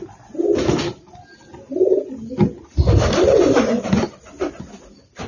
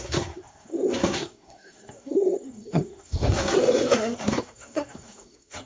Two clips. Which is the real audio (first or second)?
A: first